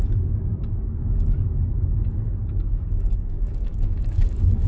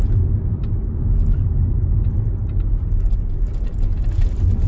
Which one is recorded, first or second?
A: second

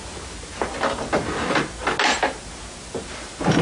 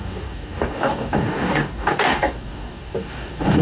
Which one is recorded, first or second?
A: first